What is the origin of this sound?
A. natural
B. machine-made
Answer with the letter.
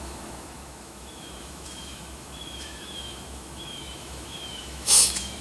B